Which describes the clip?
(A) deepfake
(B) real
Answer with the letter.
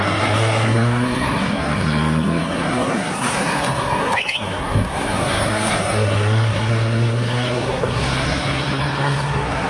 A